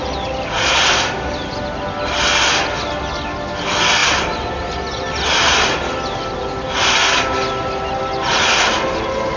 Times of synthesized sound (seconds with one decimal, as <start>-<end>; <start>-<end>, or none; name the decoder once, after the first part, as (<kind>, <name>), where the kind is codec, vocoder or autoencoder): none